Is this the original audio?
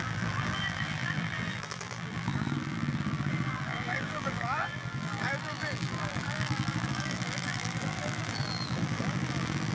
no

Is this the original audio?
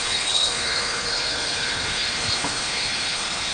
no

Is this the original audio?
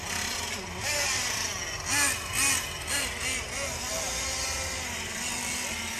yes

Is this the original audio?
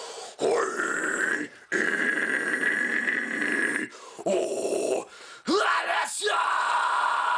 no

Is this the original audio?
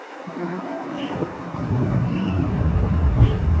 no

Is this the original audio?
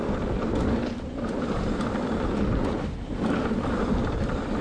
no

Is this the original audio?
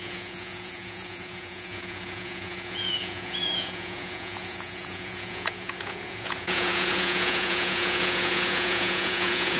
no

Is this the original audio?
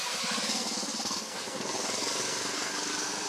no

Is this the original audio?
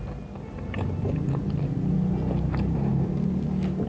yes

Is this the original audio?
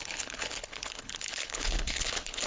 no